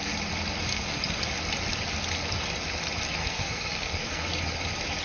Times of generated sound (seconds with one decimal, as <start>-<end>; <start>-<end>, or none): 0.7-1.3; 3.2-4.3